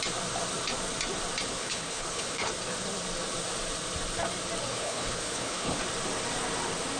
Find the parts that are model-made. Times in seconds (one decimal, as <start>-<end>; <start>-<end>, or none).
1.5-2.5; 4.7-5.8